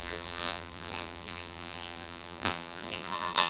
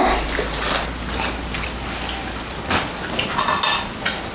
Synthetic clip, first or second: first